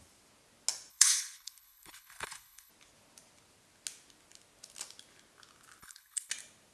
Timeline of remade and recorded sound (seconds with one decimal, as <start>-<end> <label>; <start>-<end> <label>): 0.0-0.9 recorded; 0.9-2.7 remade; 2.7-5.8 recorded; 5.8-6.3 remade; 6.3-6.7 recorded